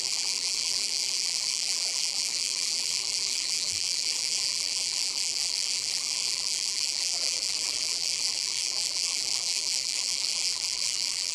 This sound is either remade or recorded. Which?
remade